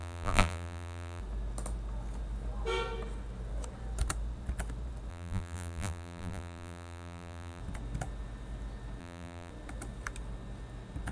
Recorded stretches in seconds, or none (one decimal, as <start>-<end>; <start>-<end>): 1.2-5.1; 7.6-9.0; 9.5-11.1

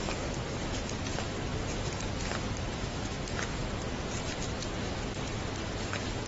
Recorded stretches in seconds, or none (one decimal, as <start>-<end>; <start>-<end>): 0.0-6.3